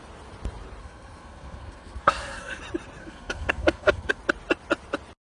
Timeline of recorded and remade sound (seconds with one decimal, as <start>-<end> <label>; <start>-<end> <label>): 0.0-0.8 recorded; 0.8-2.6 remade; 2.6-3.0 recorded; 3.0-4.2 remade; 4.2-5.2 recorded